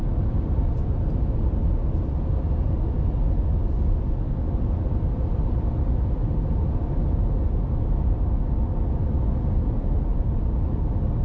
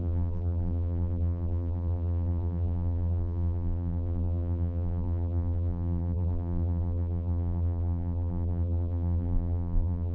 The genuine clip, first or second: first